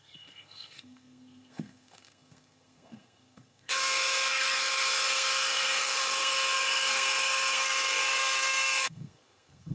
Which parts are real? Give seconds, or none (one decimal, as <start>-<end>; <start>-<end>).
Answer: none